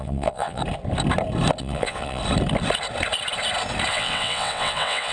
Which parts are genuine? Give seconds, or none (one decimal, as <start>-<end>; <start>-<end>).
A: 0.6-1.6; 2.2-3.9